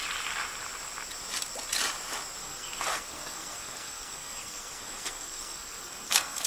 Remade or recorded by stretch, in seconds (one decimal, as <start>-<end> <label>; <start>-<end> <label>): 0.0-2.4 recorded; 2.4-6.5 remade